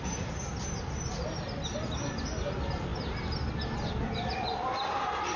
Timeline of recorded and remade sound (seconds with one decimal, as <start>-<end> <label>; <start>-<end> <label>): 0.0-5.4 recorded